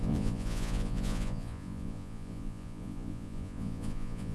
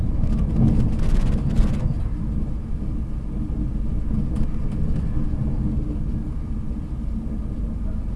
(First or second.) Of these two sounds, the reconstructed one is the first